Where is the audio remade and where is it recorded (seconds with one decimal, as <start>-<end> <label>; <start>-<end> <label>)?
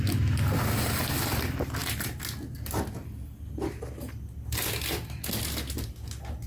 0.0-6.5 recorded